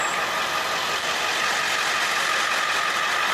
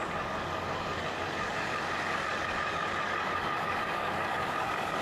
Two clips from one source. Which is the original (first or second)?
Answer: first